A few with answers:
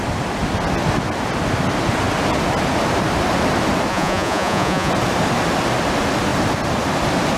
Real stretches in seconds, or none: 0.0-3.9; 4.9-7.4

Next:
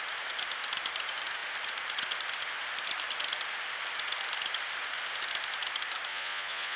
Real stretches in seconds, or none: 0.0-6.1

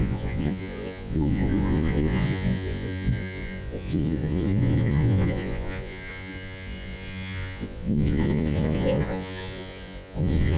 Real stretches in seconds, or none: none

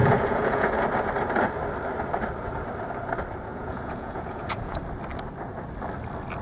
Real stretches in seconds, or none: 0.7-3.5; 4.8-6.4

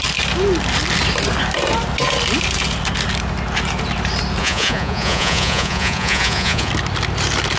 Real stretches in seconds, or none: 0.0-4.4; 6.7-7.6

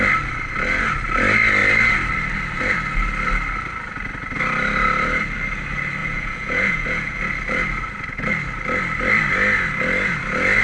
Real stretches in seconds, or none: 0.0-6.0; 7.2-10.6

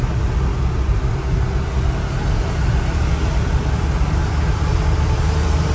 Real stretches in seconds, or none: 0.0-5.7

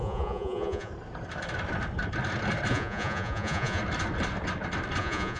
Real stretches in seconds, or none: 0.9-2.7; 3.8-5.0